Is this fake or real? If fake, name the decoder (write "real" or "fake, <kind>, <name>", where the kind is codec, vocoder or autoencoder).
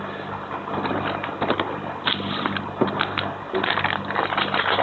real